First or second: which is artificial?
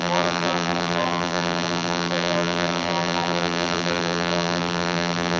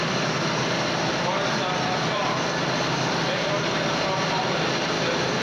first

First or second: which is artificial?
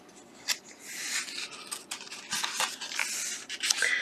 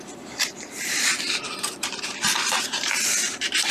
second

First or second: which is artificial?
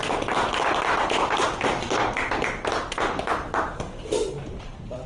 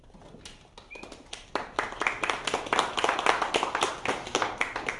first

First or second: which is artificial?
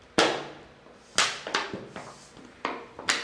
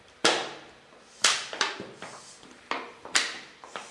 second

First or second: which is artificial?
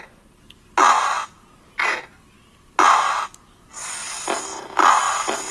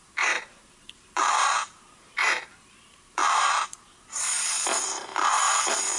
second